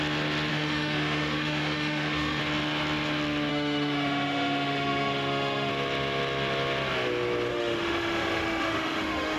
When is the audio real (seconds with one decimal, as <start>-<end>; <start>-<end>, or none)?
0.0-0.5; 2.4-3.5; 5.7-7.5